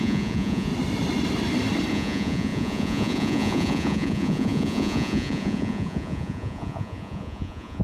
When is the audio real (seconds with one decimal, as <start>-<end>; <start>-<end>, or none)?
0.7-1.9